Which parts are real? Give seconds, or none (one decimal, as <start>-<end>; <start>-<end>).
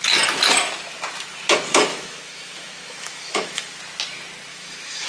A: 0.0-1.9; 3.8-4.5